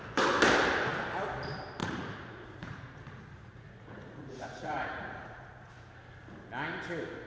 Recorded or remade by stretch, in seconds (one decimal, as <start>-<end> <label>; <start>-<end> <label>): 0.0-1.8 recorded; 1.8-5.7 remade; 5.7-7.3 recorded